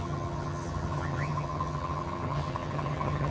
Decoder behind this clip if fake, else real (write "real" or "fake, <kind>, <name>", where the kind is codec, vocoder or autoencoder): fake, vocoder, HiFi-GAN